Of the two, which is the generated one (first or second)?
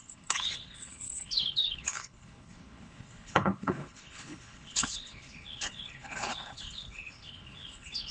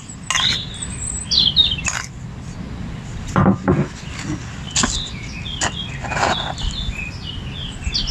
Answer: first